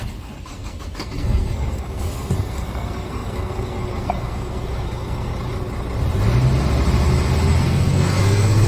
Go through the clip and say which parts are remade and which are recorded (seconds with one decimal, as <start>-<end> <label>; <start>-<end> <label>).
0.0-5.3 remade; 5.3-7.6 recorded; 7.6-8.7 remade